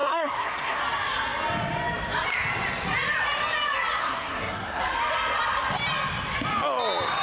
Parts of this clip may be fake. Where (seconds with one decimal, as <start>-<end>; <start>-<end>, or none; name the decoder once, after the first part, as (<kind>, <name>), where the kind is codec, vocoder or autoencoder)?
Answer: 0.0-0.8 (codec, SNAC); 4.0-4.8